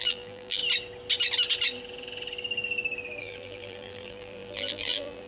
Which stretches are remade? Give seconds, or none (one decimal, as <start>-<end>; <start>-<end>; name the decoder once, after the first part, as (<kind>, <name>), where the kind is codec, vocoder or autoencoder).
0.0-0.6 (vocoder, BigVGAN v2); 3.2-5.3